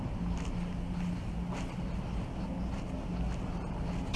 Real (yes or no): yes